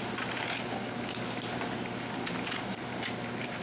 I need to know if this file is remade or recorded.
recorded